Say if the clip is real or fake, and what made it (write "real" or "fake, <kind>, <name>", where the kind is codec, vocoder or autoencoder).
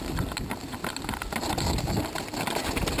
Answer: real